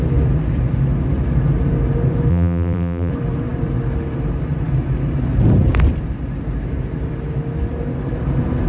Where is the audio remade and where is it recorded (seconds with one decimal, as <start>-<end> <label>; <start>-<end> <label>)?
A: 0.0-2.3 recorded; 2.3-3.1 remade; 3.1-8.7 recorded

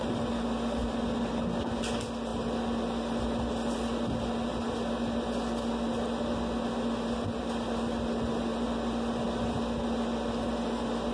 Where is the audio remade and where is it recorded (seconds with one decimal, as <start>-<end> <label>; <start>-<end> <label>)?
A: 0.0-11.1 recorded

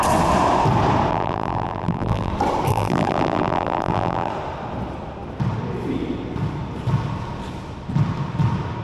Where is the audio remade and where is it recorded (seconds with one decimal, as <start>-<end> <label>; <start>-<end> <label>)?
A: 0.0-1.1 recorded; 1.1-2.3 remade; 2.3-2.7 recorded; 2.7-4.3 remade; 4.3-8.8 recorded